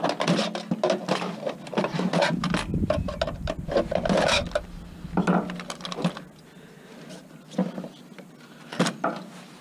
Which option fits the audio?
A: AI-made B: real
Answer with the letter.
B